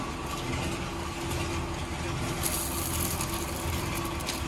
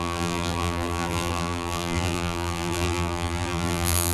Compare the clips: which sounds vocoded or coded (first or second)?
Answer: second